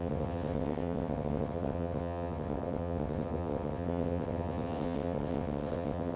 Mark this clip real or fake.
fake